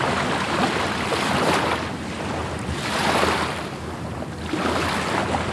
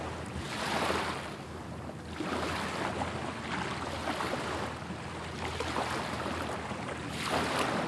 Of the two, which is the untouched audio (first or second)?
second